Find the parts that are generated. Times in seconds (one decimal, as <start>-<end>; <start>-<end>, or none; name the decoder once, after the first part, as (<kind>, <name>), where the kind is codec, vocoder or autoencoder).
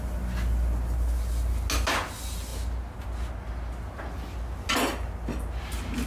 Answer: none